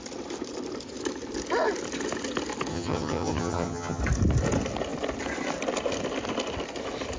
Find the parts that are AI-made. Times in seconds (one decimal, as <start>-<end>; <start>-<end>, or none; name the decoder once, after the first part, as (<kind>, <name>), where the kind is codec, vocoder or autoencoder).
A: 2.7-4.0 (vocoder, HiFi-GAN)